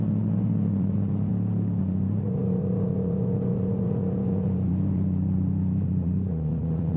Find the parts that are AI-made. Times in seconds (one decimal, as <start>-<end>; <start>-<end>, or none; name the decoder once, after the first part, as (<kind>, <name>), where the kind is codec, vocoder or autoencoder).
0.0-1.3 (vocoder, Vocos); 1.8-7.0

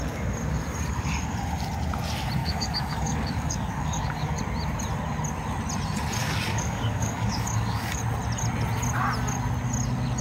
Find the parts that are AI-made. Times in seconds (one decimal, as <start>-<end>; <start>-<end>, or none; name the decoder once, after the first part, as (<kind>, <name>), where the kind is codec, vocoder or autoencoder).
2.4-4.4 (codec, DAC); 6.2-8.0